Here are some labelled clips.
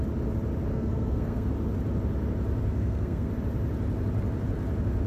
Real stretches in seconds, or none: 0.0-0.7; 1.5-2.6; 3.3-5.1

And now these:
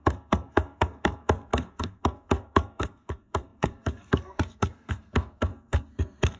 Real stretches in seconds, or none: none